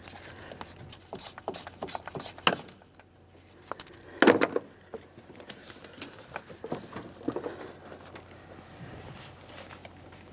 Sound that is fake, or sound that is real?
real